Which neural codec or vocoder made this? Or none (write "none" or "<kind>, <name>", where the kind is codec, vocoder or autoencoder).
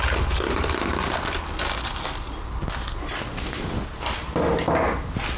none